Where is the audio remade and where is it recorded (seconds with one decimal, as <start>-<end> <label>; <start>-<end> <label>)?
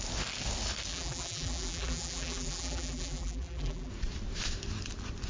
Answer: 0.0-0.9 recorded; 0.9-3.9 remade; 3.9-5.3 recorded